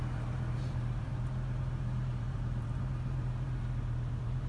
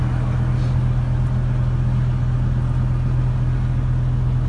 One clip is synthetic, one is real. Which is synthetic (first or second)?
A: first